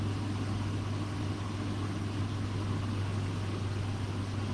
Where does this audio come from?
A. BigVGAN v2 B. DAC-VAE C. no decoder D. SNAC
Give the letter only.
C